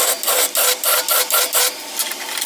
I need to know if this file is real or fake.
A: real